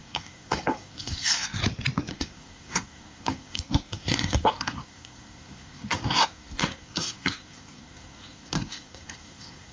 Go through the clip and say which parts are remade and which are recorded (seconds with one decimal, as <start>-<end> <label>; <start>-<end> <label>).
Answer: 0.0-1.6 remade; 1.6-2.1 recorded; 2.1-9.7 remade